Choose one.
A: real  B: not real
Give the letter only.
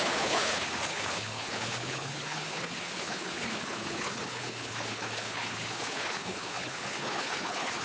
B